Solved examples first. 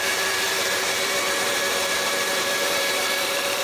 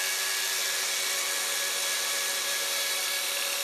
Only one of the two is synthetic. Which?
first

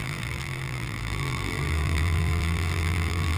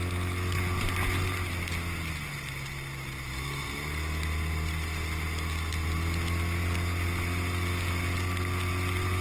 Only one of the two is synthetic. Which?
first